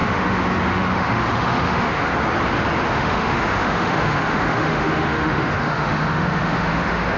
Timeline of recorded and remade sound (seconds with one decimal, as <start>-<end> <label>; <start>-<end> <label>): 0.0-2.1 remade; 2.1-2.9 recorded; 2.9-7.2 remade